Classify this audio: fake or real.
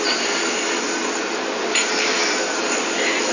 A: fake